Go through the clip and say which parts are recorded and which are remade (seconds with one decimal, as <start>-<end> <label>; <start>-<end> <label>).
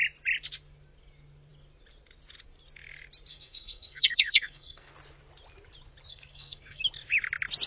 0.0-3.3 recorded; 3.3-4.9 remade; 4.9-6.1 recorded; 6.1-6.8 remade; 6.8-7.7 recorded